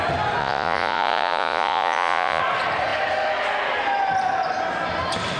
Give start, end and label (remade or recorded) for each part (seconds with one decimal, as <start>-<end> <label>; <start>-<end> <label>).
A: 0.0-0.4 recorded; 0.4-2.4 remade; 2.4-5.4 recorded